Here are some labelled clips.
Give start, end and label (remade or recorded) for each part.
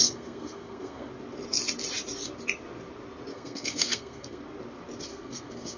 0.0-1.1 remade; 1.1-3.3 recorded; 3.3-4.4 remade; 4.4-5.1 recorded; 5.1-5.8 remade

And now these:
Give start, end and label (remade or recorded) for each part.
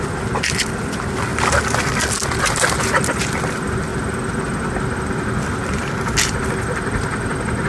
0.0-7.7 recorded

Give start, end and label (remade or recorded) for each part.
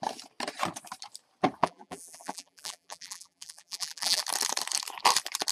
0.0-1.6 recorded; 1.6-4.2 remade; 4.2-5.5 recorded